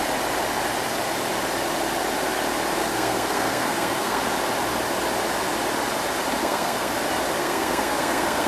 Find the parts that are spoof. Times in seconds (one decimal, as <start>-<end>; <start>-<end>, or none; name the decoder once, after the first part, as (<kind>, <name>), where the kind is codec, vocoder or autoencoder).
2.8-4.2 (codec, SNAC); 6.4-6.9; 7.4-8.5